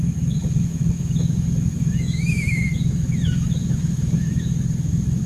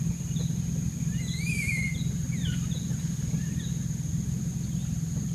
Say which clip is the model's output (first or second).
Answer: first